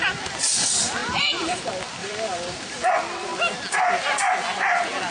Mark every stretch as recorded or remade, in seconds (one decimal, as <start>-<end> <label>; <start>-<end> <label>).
0.0-1.0 recorded; 1.0-1.6 remade; 1.6-2.0 recorded; 2.0-2.9 remade; 2.9-5.1 recorded